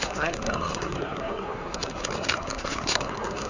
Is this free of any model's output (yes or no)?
no